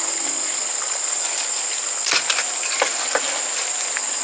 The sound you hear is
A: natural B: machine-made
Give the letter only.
A